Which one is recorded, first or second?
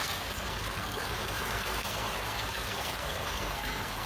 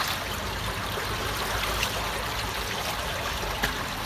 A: second